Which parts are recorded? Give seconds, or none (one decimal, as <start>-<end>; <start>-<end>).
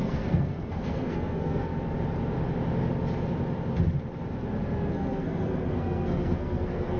1.7-4.9